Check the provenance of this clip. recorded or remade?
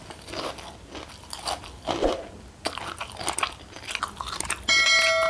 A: recorded